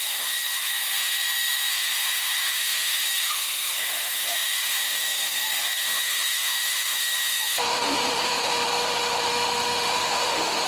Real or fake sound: fake